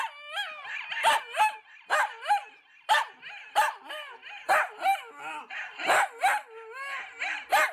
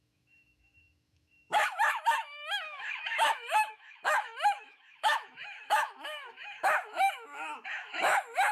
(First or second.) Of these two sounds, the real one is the first